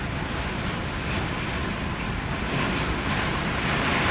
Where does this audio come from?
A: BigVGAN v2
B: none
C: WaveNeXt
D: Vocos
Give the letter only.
B